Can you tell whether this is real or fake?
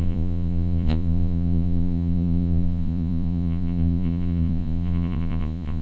fake